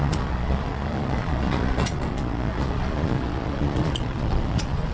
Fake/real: fake